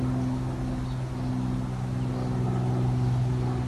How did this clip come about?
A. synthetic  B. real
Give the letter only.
B